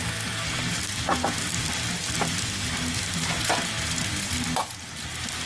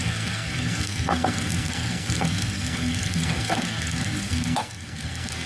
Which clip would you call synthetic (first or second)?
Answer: second